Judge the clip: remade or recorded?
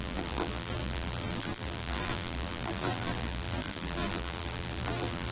remade